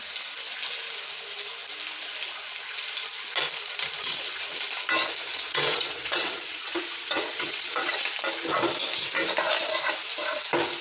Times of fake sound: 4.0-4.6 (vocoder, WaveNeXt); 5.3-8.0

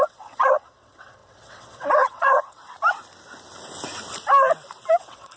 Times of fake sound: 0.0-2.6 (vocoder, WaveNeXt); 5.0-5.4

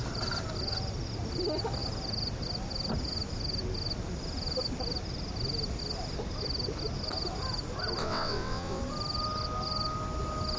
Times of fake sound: 8.0-8.8 (vocoder, WaveNeXt)

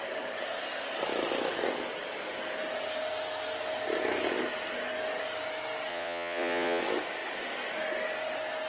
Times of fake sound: 5.9-6.8 (vocoder, WaveNeXt)

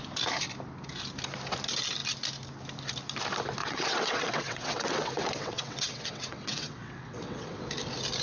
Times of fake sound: 3.6-7.7 (vocoder, WaveNeXt)

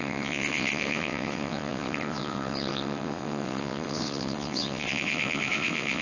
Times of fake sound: 0.0-6.0 (vocoder, WaveNeXt)